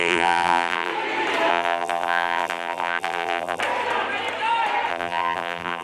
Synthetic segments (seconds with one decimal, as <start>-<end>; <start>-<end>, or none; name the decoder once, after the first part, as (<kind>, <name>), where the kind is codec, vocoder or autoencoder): 0.0-0.9 (vocoder, BigVGAN v2); 1.5-3.6; 4.9-5.8